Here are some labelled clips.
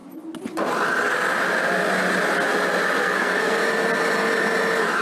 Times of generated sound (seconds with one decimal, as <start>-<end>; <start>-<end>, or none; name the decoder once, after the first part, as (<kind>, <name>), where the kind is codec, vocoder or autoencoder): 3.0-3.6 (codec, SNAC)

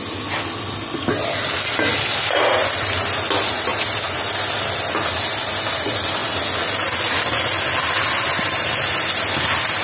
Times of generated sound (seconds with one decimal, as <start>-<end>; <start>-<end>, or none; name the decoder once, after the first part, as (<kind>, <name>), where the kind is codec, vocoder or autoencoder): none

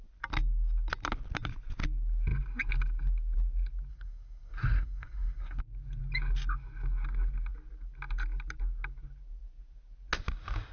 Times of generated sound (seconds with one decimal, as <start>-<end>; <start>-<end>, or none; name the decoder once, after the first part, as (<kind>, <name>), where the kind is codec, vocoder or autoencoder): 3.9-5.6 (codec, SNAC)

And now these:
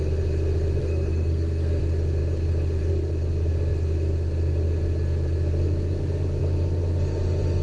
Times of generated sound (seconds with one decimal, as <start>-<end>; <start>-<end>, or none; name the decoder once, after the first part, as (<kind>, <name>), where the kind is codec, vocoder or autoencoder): 0.8-1.8 (codec, SNAC)

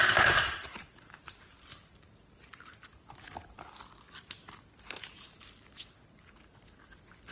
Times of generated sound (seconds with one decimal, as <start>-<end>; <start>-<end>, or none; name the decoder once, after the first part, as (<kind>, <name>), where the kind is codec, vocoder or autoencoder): none